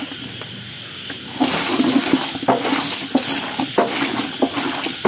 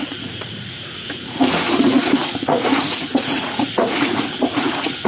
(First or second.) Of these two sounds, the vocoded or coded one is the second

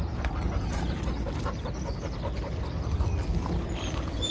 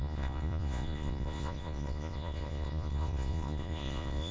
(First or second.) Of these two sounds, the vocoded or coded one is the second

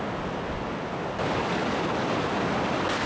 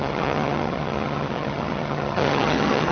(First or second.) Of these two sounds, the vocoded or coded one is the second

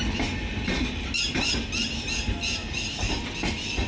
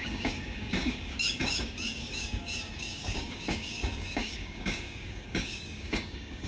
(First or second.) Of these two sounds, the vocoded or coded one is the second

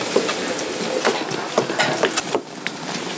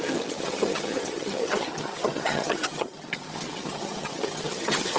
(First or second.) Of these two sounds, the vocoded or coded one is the second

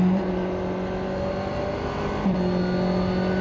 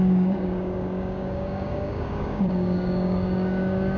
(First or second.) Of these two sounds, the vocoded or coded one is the second